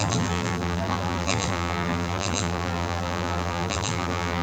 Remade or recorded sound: remade